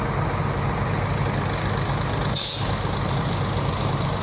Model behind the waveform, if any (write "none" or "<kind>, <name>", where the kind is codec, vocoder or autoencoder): none